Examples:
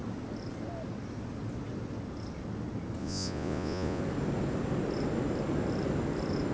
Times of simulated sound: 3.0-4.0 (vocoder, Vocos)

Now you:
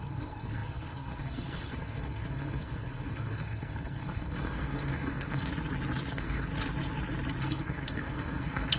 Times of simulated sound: 0.0-5.5 (codec, SNAC); 6.1-6.5; 7.4-8.8

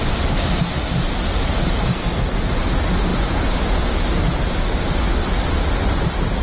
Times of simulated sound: 1.9-2.5 (codec, SNAC)

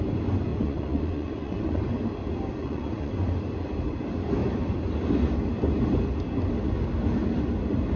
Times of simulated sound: 0.5-1.8 (vocoder, Vocos); 2.6-3.1

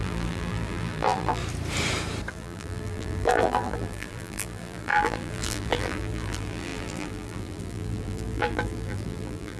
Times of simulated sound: 0.0-1.4 (vocoder, BigVGAN v2); 2.3-9.6

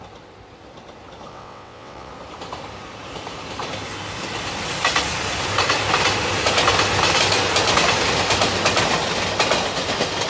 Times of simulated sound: 1.3-2.1 (vocoder, WaveNeXt)

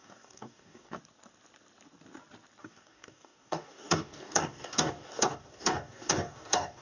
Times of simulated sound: 0.0-1.0 (codec, DAC); 2.6-6.8

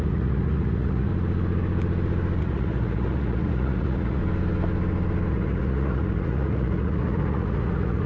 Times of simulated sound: 0.0-1.1 (vocoder, Vocos); 2.4-4.2; 5.3-8.1